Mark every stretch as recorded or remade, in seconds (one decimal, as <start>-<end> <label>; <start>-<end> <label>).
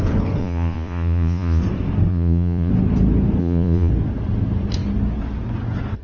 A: 0.0-0.4 recorded; 0.4-1.6 remade; 1.6-2.1 recorded; 2.1-2.7 remade; 2.7-3.4 recorded; 3.4-3.9 remade; 3.9-6.0 recorded